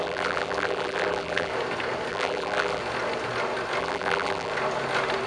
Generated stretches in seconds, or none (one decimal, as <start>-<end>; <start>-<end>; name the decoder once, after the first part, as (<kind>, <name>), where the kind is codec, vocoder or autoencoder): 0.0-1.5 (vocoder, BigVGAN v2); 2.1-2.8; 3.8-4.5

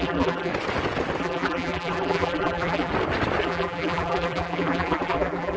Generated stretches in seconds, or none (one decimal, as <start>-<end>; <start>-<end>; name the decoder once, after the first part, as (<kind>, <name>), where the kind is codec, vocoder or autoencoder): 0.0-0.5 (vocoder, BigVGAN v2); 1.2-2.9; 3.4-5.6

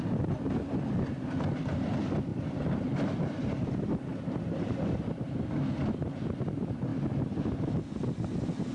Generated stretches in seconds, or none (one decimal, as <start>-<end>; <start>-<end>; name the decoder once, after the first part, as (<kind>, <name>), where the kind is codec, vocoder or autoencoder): 2.3-5.5 (vocoder, BigVGAN v2)

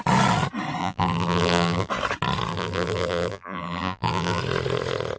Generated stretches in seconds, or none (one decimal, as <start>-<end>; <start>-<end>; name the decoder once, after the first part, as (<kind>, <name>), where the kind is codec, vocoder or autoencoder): 0.8-1.9 (vocoder, BigVGAN v2); 2.5-4.4